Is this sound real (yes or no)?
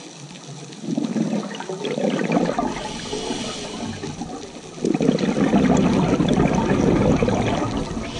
yes